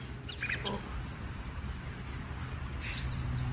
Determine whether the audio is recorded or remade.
recorded